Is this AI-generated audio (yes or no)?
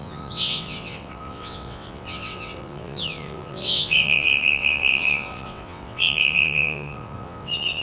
yes